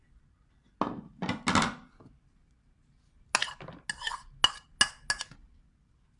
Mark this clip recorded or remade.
recorded